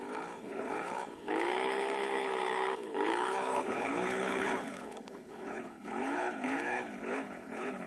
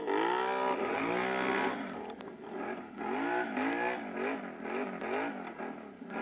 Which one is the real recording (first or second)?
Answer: second